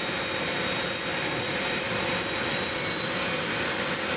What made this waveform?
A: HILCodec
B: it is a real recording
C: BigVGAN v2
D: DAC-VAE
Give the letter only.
B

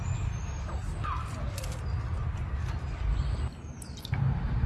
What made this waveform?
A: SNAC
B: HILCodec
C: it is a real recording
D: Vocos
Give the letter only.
C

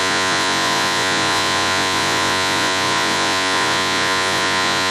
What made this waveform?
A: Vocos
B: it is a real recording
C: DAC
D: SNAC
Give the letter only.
A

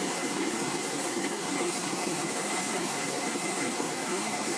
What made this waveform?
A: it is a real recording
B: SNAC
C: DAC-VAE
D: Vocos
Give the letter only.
B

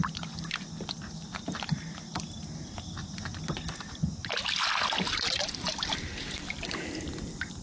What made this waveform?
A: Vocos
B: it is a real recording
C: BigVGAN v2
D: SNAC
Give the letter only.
B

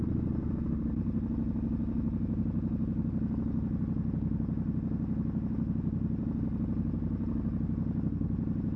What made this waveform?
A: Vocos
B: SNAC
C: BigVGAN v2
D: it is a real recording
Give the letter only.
D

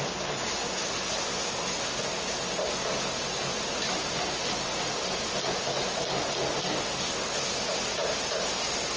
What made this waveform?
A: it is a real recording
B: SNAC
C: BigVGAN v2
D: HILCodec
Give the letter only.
A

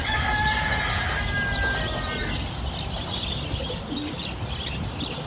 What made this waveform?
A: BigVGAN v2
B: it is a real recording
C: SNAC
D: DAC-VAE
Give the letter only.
B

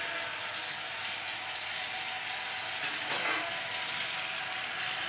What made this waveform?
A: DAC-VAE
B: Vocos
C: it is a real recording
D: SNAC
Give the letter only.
C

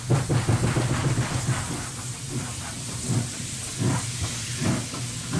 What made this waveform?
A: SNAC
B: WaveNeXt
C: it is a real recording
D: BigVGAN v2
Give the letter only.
C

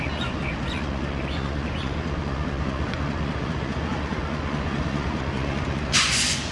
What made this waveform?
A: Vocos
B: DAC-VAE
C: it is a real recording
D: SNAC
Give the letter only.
A